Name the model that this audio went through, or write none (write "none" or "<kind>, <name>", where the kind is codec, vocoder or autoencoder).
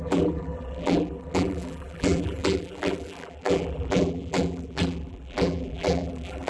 vocoder, BigVGAN v2